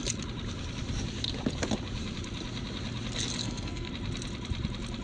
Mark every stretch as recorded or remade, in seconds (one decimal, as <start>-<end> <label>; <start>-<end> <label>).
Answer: 0.0-3.4 recorded; 3.4-3.9 remade; 3.9-5.0 recorded